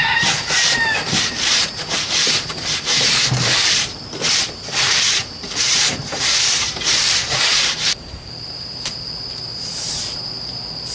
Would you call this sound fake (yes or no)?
yes